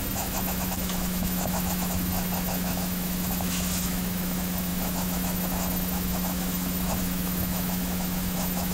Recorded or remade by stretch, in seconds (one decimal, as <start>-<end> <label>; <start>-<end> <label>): 0.0-8.7 remade